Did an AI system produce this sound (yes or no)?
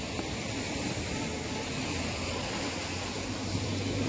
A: yes